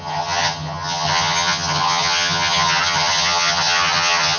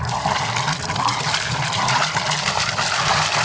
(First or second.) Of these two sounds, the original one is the second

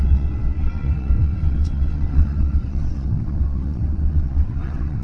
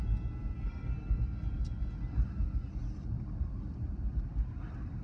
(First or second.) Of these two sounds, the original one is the second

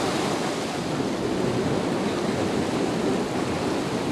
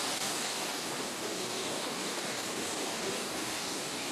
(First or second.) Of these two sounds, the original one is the first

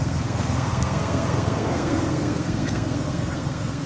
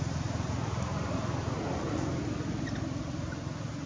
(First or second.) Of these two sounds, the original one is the second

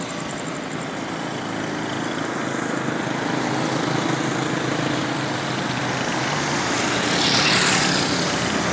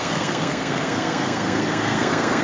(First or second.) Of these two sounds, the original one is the first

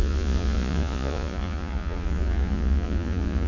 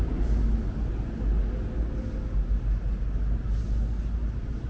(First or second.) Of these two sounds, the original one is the second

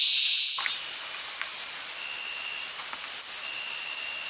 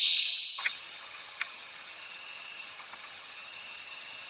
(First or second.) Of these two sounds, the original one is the first